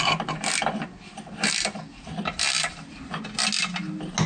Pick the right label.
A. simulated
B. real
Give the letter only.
B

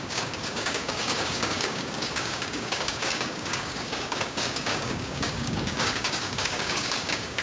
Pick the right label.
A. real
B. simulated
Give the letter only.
B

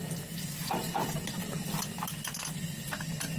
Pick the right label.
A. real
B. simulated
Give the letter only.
A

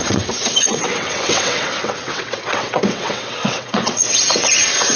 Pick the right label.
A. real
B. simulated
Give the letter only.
B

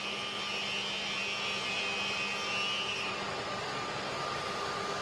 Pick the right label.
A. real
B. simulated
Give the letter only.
A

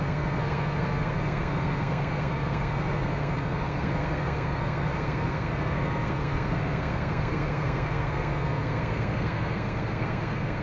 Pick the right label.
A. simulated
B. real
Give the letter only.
A